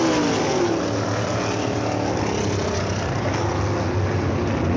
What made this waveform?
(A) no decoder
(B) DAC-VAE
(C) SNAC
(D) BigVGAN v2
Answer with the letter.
A